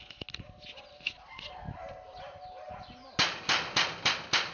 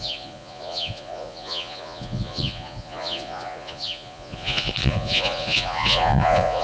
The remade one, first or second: second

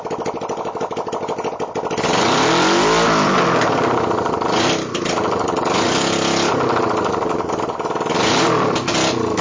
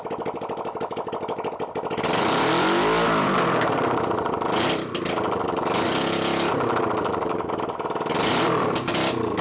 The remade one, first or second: second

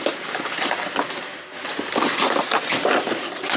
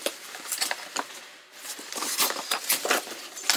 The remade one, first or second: second